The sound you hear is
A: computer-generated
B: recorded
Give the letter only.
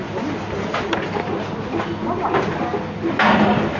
B